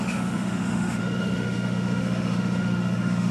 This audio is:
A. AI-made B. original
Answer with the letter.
A